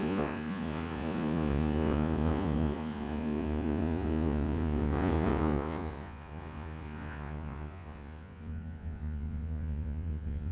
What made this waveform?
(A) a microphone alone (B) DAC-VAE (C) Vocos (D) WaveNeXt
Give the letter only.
C